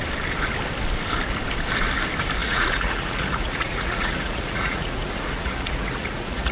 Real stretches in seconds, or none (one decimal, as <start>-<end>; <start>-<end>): 0.0-2.4